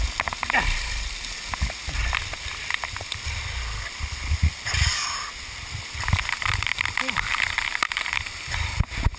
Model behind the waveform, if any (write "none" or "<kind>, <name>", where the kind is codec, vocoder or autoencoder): none